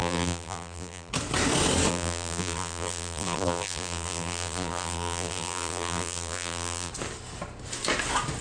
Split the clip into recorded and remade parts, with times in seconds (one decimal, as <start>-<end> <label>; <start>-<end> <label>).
0.0-1.1 remade; 1.1-1.9 recorded; 1.9-6.9 remade; 6.9-8.4 recorded